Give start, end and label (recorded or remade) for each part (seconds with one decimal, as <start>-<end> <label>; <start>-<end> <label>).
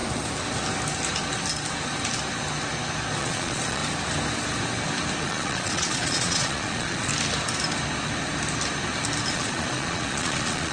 0.0-3.2 recorded; 3.2-3.8 remade; 3.8-5.2 recorded; 5.2-7.1 remade; 7.1-9.3 recorded; 9.3-10.7 remade